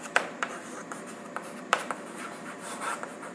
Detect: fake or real fake